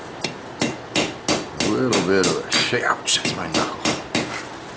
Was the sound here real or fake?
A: real